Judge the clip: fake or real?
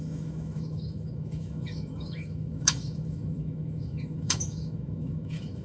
fake